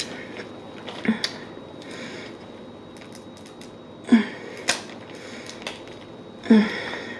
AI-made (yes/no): no